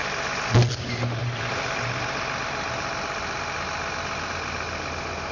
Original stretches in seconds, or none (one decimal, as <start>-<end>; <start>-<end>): 0.0-5.3